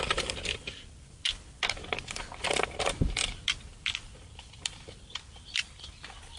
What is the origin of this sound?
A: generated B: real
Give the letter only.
B